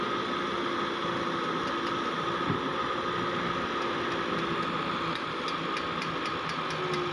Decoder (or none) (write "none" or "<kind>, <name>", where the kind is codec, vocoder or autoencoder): none